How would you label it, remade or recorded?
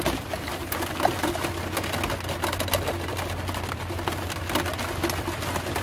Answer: recorded